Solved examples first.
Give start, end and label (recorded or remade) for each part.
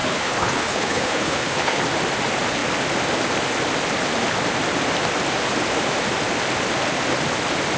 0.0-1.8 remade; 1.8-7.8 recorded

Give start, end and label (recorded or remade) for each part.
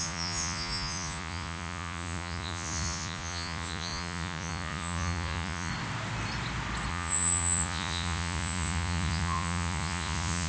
0.0-5.7 remade; 5.7-6.9 recorded; 6.9-10.5 remade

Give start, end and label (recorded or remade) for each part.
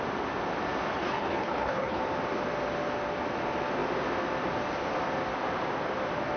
0.0-0.9 recorded; 0.9-2.0 remade; 2.0-6.4 recorded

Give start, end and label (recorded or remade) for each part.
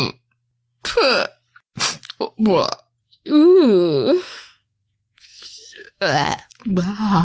0.0-3.0 recorded; 3.0-6.5 remade; 6.5-7.2 recorded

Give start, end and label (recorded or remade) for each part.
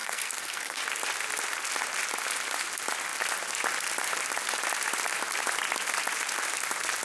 0.0-0.8 remade; 0.8-7.0 recorded